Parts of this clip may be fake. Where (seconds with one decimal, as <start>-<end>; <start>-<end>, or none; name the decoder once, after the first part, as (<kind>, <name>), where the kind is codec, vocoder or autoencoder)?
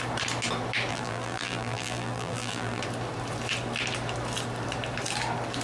0.9-2.8 (vocoder, BigVGAN v2)